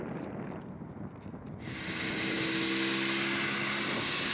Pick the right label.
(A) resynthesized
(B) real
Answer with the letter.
B